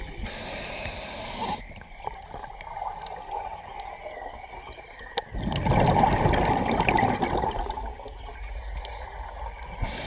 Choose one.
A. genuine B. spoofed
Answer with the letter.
A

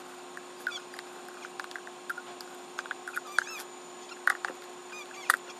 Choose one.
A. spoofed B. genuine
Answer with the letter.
B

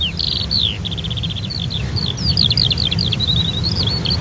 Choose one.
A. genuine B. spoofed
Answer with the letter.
A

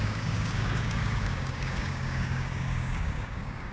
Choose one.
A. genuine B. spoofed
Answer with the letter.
B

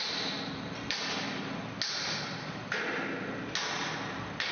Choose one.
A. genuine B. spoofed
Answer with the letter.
A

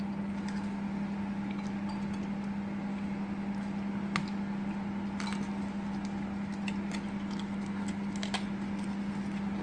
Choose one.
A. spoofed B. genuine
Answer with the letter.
B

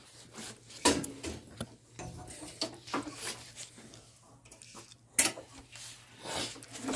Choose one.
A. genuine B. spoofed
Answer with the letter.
A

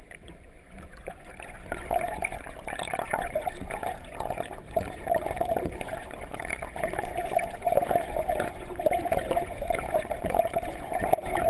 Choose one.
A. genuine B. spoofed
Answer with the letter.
B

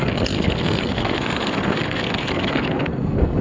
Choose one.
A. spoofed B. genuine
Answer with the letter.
A